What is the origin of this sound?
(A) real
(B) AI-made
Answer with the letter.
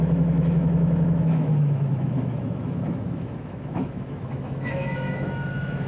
B